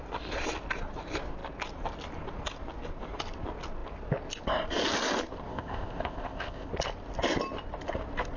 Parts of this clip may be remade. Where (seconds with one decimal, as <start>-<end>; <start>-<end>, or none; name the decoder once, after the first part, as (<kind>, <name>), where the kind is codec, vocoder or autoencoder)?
5.5-6.7 (codec, ZipCodec)